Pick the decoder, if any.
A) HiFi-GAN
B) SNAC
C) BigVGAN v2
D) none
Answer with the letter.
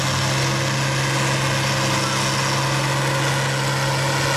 D